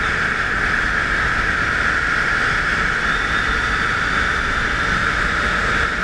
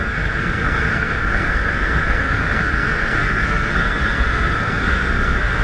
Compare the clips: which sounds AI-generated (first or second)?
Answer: second